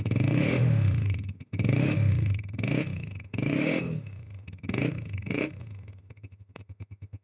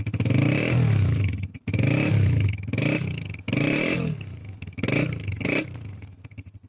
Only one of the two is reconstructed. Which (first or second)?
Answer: first